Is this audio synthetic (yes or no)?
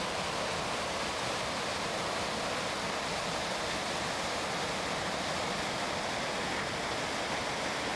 no